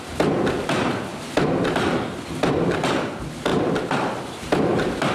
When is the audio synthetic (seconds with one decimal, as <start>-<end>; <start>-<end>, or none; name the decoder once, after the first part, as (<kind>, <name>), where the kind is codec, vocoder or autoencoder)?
3.5-4.1 (vocoder, BigVGAN v2)